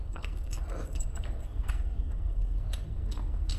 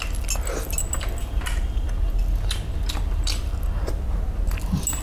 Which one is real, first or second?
second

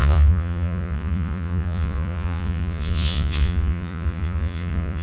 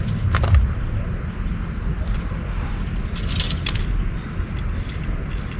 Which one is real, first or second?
second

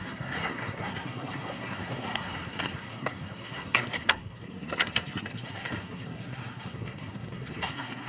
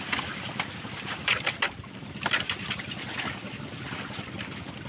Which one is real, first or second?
second